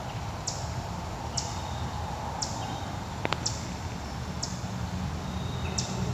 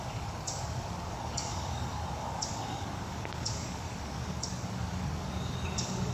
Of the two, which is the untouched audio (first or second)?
first